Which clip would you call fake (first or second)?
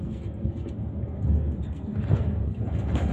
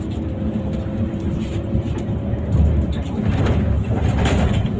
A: first